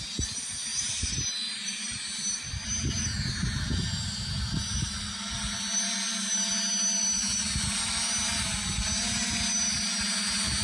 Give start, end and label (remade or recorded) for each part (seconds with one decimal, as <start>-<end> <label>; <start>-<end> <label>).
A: 0.0-10.6 recorded